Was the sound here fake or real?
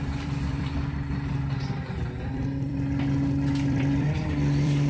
fake